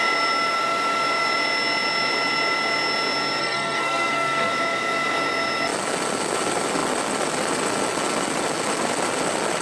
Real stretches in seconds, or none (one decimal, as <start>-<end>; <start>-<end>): 0.0-3.4; 4.5-9.6